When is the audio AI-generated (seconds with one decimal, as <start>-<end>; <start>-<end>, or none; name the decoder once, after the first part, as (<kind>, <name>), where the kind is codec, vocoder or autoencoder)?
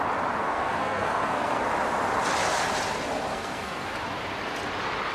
0.4-1.6 (codec, SNAC); 3.3-3.9